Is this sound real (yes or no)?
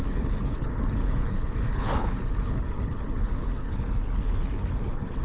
no